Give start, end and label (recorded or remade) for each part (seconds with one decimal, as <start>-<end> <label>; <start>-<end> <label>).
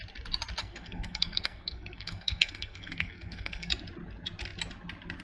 0.0-0.6 recorded; 0.6-3.7 remade; 3.7-5.2 recorded